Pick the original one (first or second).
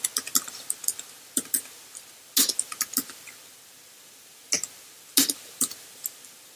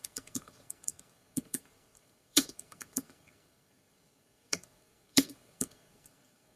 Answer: first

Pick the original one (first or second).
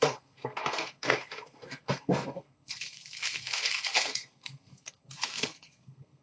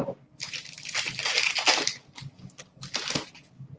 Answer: second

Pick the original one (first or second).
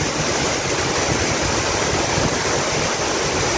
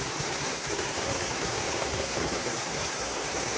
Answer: first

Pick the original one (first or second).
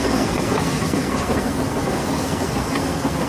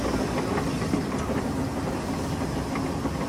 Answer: second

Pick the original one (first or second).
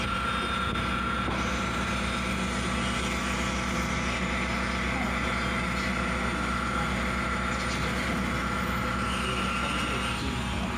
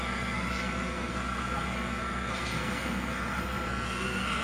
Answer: first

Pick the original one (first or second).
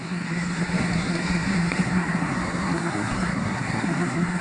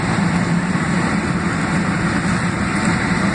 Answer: second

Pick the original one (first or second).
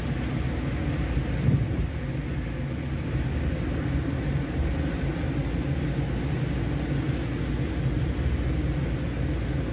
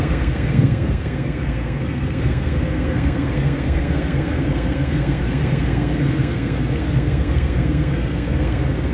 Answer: first